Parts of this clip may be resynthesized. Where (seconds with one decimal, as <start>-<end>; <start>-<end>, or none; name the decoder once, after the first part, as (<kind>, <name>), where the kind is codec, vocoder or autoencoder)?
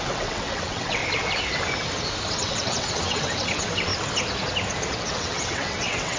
0.0-1.0 (vocoder, WaveNeXt); 2.3-3.9; 4.9-6.2